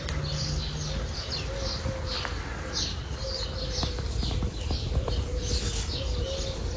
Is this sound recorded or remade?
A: recorded